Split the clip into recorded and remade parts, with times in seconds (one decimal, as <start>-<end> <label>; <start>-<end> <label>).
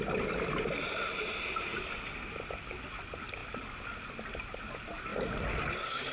0.0-3.4 recorded; 3.4-4.1 remade; 4.1-6.1 recorded